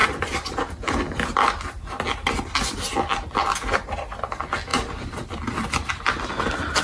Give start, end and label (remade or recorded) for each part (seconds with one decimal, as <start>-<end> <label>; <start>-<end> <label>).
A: 0.0-6.8 recorded